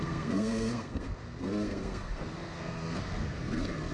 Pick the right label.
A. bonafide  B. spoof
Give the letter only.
B